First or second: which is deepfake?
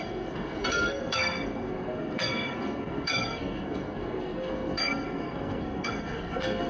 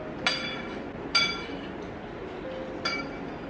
first